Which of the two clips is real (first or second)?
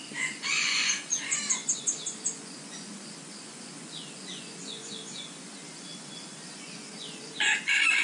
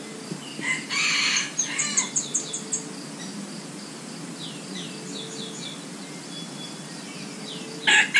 second